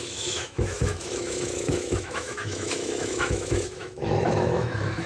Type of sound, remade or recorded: remade